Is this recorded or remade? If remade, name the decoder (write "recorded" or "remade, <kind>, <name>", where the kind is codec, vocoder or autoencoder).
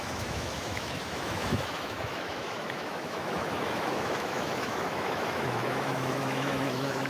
remade, autoencoder, DAC-VAE